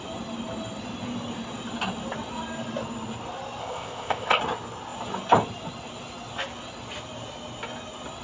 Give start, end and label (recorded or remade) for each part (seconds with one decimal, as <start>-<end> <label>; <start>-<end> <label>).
0.0-3.6 recorded; 3.6-4.4 remade; 4.4-8.2 recorded

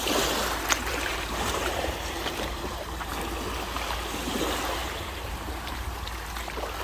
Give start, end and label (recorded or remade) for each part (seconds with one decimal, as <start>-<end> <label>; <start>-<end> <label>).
0.0-0.9 recorded; 0.9-3.1 remade; 3.1-4.8 recorded; 4.8-6.1 remade; 6.1-6.8 recorded

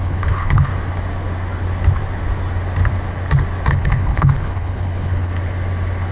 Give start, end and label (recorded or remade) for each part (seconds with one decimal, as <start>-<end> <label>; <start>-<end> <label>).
0.0-0.7 remade; 0.7-3.7 recorded; 3.7-5.3 remade; 5.3-6.1 recorded

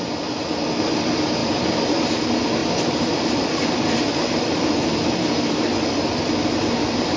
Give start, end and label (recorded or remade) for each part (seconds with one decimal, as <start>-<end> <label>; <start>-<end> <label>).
0.0-1.4 recorded; 1.4-1.9 remade; 1.9-2.6 recorded; 2.6-5.6 remade; 5.6-7.2 recorded

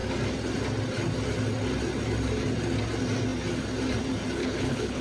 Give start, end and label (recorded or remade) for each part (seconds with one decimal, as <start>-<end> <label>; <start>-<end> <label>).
0.0-4.4 recorded; 4.4-5.0 remade